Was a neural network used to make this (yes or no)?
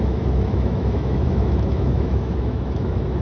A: yes